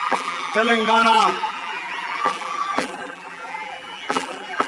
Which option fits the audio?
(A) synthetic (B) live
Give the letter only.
A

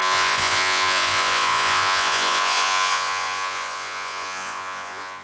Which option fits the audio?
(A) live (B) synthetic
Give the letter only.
B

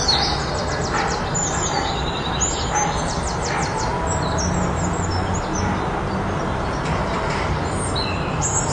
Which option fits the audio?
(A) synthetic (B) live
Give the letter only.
B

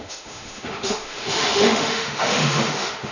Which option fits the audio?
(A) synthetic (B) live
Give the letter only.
A